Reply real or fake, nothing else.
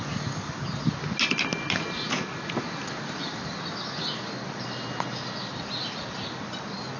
real